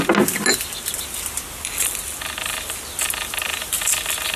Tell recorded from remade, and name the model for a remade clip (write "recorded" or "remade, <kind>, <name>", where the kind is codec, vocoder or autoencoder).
recorded